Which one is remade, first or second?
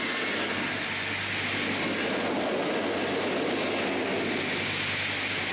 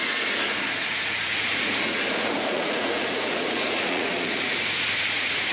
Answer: second